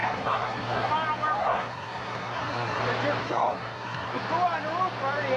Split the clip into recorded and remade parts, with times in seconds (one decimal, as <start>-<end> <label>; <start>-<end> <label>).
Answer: 0.0-0.9 remade; 0.9-1.4 recorded; 1.4-2.8 remade; 2.8-3.2 recorded; 3.2-4.2 remade; 4.2-5.4 recorded